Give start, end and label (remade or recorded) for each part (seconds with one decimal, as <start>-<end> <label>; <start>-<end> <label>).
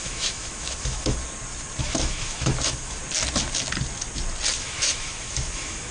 0.0-1.2 remade; 1.2-1.8 recorded; 1.8-3.0 remade; 3.0-4.5 recorded; 4.5-5.9 remade